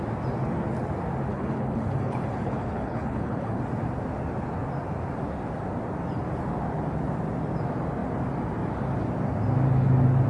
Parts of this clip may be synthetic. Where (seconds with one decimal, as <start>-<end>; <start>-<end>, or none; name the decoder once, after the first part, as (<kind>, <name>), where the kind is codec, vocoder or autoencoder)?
1.3-3.6 (codec, HILCodec)

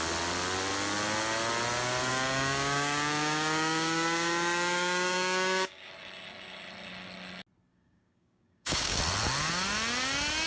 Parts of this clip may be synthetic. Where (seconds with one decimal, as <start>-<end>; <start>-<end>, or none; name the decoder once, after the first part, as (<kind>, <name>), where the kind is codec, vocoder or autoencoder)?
2.1-5.9 (codec, DAC); 7.7-9.0

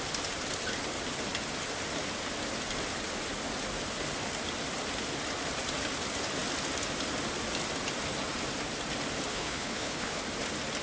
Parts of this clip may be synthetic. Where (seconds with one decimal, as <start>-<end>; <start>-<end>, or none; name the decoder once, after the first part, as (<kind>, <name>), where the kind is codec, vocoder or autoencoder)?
9.3-10.2 (codec, HILCodec)